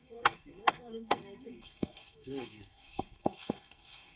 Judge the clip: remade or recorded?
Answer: remade